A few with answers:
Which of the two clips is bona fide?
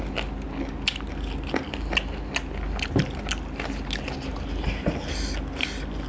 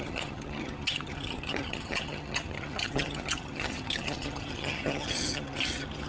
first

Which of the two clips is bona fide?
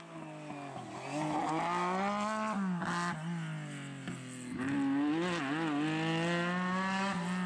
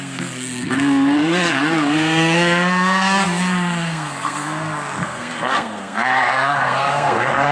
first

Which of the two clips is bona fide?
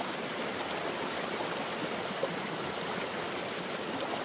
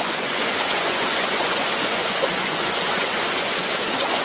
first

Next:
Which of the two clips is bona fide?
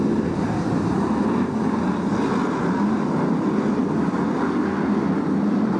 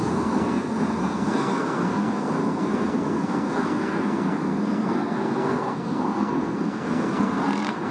first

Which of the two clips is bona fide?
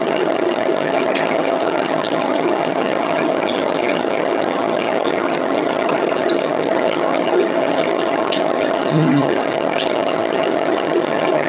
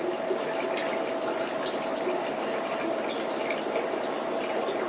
second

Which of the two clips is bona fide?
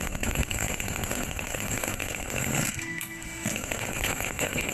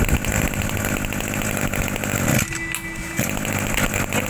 second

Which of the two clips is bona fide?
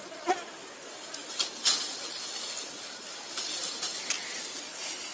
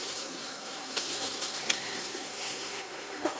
first